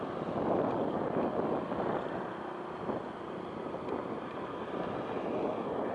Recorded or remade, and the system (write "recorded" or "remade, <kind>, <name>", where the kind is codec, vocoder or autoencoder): recorded